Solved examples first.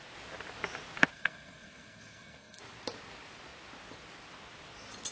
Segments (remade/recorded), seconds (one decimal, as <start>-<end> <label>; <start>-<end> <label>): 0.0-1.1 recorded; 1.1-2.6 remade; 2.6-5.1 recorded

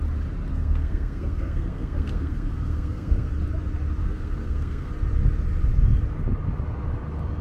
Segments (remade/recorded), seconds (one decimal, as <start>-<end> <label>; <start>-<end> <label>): 0.0-0.5 recorded; 0.5-3.3 remade; 3.3-4.0 recorded; 4.0-4.9 remade; 4.9-7.4 recorded

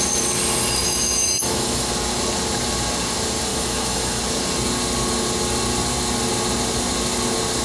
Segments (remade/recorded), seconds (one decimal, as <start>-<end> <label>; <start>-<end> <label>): 0.0-0.8 recorded; 0.8-1.9 remade; 1.9-3.5 recorded; 3.5-4.2 remade; 4.2-7.6 recorded

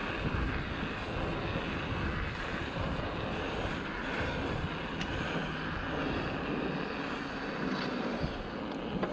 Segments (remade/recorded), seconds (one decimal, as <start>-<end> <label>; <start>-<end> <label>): 0.0-9.1 recorded